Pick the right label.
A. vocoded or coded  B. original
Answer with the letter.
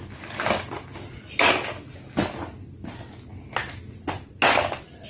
B